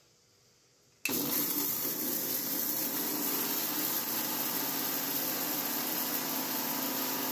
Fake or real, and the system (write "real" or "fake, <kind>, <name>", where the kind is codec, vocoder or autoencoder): real